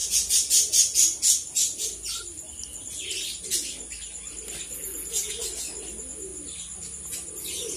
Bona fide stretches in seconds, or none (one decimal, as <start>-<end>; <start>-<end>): 0.0-7.8